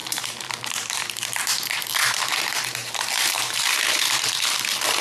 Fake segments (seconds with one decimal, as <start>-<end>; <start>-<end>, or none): 0.0-5.0